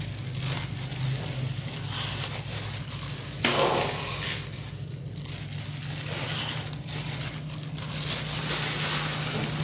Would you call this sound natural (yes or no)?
yes